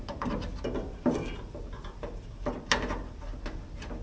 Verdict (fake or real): real